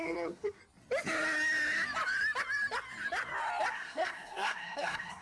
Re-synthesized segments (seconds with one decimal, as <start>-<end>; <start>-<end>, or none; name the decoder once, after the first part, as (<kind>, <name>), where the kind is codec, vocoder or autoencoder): 0.0-0.6 (codec, SNAC); 3.7-5.2